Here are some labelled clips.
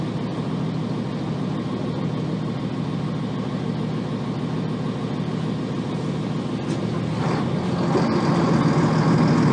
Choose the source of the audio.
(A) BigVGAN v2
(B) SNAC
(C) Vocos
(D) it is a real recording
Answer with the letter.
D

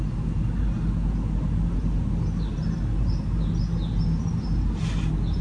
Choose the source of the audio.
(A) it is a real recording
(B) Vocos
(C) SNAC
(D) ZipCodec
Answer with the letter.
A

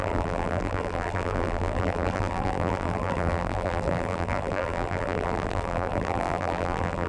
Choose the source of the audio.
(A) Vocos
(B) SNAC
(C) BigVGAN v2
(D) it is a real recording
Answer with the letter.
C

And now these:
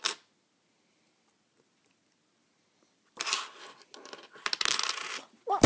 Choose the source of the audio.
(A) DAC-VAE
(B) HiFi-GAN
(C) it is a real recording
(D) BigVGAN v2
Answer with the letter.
C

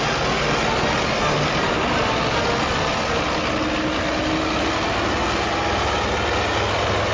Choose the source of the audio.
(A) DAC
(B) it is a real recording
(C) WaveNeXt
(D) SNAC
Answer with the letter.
B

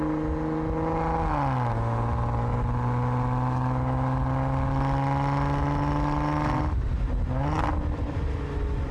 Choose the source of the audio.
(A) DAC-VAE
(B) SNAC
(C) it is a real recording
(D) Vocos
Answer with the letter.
C